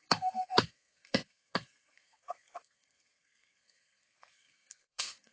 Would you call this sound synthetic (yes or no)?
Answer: yes